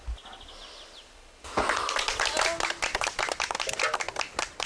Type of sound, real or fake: real